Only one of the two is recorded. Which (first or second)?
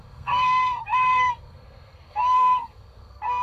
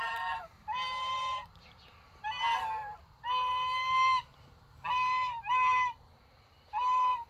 second